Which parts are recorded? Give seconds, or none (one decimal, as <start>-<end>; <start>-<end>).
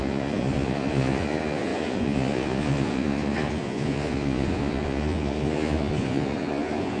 none